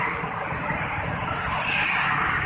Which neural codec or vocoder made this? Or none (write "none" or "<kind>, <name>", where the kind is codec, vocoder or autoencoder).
none